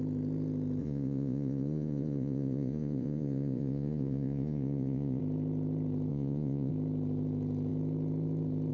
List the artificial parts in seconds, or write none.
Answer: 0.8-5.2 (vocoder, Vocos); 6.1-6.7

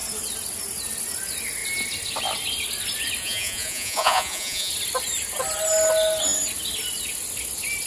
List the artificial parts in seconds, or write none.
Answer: 3.2-4.7 (vocoder, Vocos)

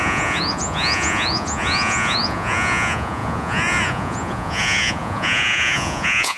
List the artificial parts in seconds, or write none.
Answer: 0.0-6.4 (vocoder, Vocos)

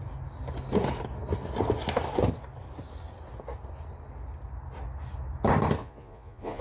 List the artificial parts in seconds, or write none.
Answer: 5.8-6.6 (vocoder, Vocos)